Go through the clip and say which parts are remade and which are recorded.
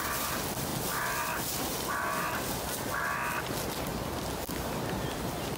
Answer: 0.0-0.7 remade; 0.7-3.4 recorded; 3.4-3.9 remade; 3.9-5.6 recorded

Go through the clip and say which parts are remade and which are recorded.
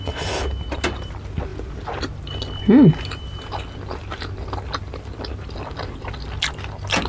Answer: 0.0-7.1 recorded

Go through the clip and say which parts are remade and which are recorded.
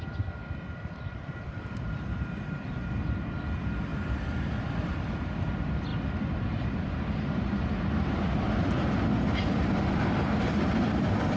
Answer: 0.0-5.9 remade; 5.9-6.5 recorded; 6.5-11.4 remade